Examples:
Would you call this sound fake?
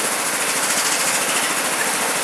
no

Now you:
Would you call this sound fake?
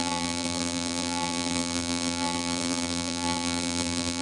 yes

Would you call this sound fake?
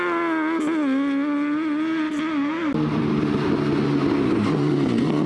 no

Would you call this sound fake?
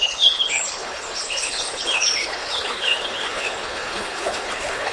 yes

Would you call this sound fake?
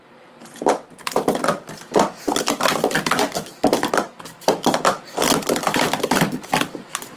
no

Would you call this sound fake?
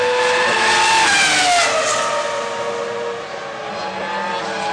no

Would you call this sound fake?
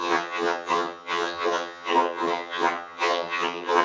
yes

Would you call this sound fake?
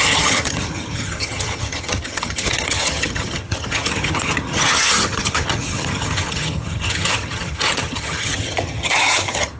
yes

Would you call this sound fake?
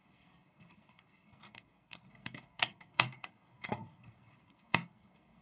yes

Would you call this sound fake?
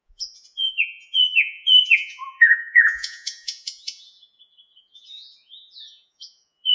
yes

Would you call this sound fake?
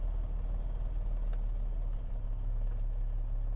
no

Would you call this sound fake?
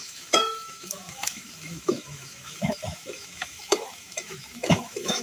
yes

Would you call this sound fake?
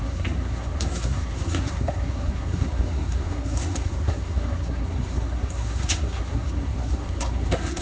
yes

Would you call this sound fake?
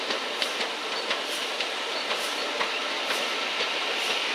no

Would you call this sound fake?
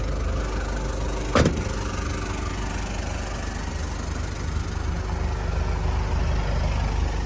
no